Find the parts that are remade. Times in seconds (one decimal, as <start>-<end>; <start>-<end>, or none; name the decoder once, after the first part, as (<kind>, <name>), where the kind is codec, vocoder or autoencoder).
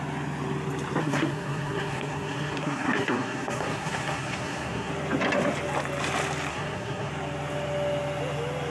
1.0-4.9 (codec, SNAC); 6.5-7.1